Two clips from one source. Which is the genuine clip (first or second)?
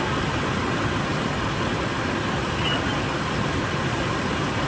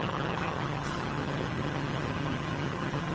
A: first